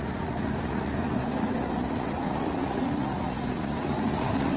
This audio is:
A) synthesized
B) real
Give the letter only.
A